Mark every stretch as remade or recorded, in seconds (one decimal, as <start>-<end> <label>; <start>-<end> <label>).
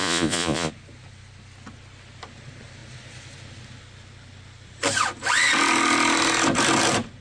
0.0-0.7 remade; 0.7-7.2 recorded